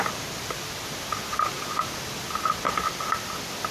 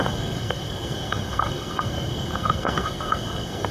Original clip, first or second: first